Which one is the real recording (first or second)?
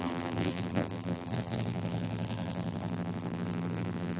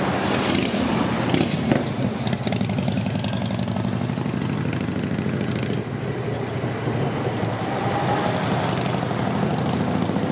second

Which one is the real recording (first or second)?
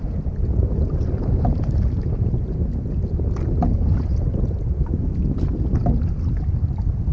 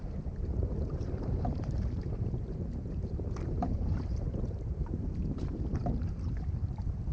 first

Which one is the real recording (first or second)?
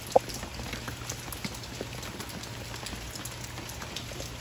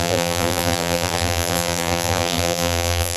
first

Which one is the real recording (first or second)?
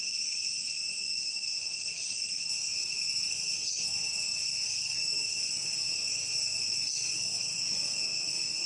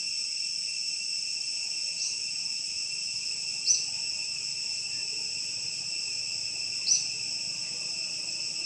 second